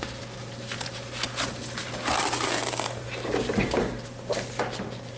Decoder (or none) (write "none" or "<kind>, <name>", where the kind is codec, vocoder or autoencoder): none